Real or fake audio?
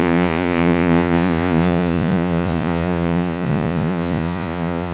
fake